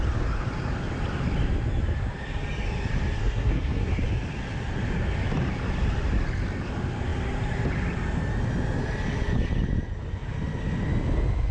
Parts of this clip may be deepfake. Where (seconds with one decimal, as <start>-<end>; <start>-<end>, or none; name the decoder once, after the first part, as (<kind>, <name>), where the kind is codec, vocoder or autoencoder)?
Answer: 3.2-3.9 (codec, SNAC)